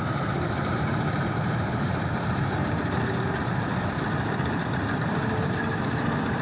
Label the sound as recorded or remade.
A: remade